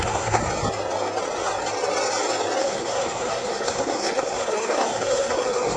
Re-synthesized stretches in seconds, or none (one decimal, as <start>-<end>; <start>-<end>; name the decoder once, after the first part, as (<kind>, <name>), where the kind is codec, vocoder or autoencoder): 0.0-0.4 (codec, SNAC); 2.6-5.8